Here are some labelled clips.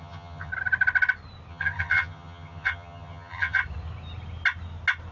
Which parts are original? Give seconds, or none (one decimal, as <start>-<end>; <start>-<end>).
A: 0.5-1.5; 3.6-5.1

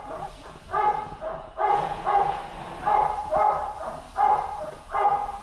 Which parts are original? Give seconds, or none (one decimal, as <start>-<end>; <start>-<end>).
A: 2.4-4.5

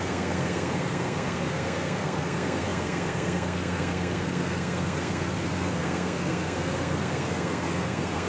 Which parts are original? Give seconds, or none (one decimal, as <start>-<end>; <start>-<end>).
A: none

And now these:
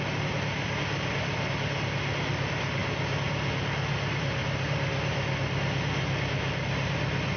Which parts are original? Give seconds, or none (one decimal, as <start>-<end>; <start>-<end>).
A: 0.0-7.4